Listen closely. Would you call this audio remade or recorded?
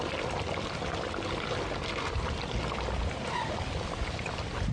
recorded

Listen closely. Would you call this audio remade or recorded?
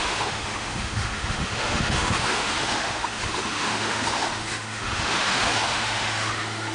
remade